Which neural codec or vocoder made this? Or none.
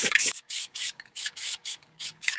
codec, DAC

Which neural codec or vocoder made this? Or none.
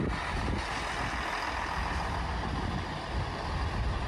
none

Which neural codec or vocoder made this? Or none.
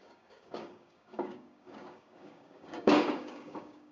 codec, DAC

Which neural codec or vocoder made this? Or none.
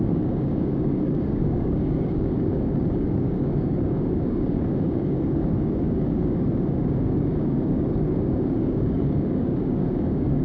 codec, DAC